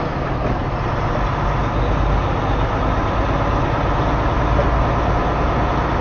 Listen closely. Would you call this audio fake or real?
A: real